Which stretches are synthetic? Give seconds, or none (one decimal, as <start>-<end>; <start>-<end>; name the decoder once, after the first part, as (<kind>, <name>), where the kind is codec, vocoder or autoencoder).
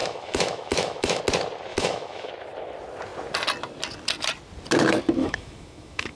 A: 0.0-1.2 (autoencoder, DAC-VAE); 1.7-2.3; 5.2-6.2